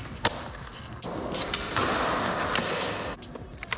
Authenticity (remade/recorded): recorded